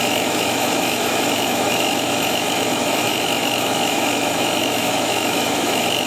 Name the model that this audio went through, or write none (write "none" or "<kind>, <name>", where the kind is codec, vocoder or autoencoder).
autoencoder, DAC-VAE